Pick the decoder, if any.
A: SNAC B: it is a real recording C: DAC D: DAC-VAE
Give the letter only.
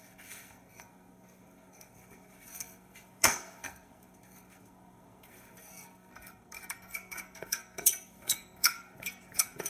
A